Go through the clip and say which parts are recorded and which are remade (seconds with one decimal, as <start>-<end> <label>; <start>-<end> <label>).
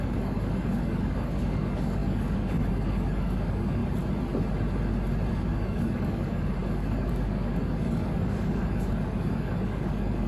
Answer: 0.0-3.8 remade; 3.8-5.3 recorded; 5.3-10.3 remade